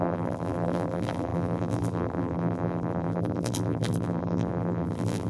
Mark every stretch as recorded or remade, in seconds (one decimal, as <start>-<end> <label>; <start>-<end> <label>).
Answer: 0.0-5.3 remade